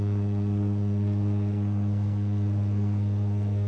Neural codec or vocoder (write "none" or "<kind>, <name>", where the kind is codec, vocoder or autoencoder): codec, SNAC